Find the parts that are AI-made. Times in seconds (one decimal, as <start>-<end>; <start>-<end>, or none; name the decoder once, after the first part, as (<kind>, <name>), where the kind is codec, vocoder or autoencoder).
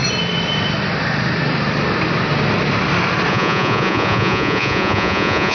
3.3-5.5 (vocoder, Vocos)